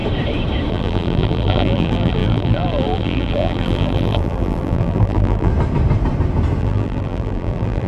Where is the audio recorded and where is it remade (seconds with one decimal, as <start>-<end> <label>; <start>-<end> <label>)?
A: 0.0-0.7 recorded; 0.7-5.5 remade; 5.5-6.6 recorded; 6.6-7.9 remade